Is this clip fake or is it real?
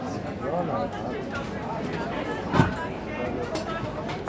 real